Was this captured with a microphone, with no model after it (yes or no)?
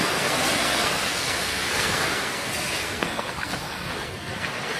no